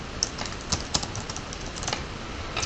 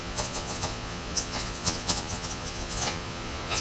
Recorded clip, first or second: first